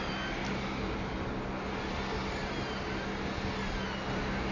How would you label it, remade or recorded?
recorded